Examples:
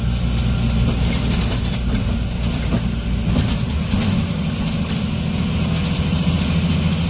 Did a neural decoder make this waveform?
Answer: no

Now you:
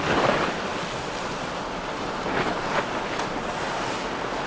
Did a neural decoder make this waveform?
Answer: no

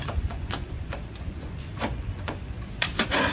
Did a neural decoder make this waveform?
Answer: yes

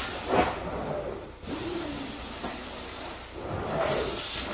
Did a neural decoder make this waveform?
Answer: no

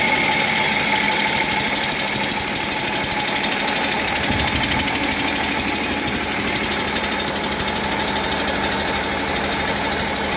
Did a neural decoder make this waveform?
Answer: no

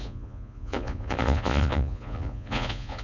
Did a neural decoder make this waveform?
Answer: yes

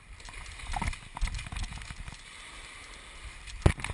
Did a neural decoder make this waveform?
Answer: no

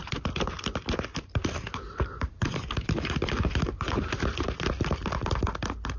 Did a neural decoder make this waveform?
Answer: no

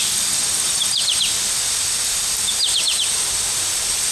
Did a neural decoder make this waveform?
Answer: no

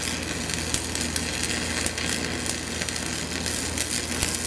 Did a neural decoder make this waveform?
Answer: no